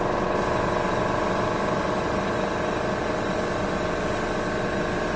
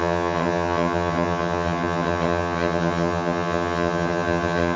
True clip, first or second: first